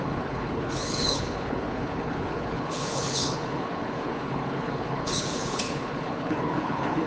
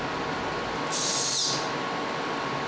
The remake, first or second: first